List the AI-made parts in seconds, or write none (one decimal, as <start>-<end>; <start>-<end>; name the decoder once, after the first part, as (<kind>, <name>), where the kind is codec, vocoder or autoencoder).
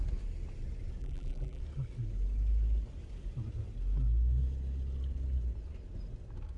1.0-1.6 (vocoder, BigVGAN v2)